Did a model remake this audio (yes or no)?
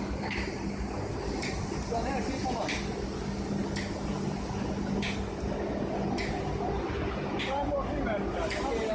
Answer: no